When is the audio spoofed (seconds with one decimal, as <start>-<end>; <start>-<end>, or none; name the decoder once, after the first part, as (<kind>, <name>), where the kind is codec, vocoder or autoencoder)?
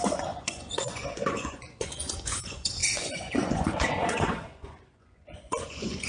0.0-6.1 (vocoder, Vocos)